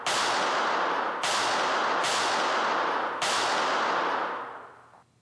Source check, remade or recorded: recorded